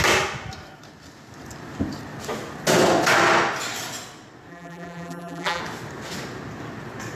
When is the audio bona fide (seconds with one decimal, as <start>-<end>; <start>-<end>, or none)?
0.0-4.5; 5.6-7.1